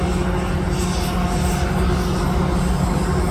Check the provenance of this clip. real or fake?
real